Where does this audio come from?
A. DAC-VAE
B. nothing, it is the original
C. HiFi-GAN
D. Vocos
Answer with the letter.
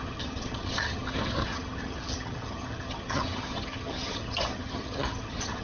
C